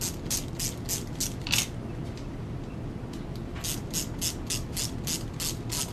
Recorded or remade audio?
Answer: recorded